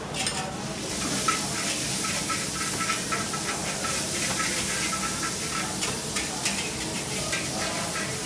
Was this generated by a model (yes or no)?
no